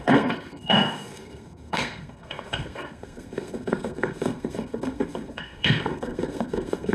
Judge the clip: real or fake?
fake